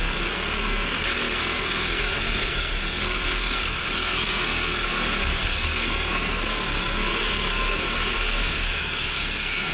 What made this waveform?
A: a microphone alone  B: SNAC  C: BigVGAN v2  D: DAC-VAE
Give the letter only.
B